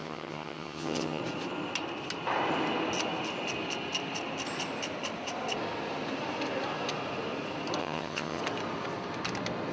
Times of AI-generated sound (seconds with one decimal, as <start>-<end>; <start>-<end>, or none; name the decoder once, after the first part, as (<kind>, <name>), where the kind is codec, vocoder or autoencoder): 0.0-1.2 (vocoder, HiFi-GAN); 7.8-8.4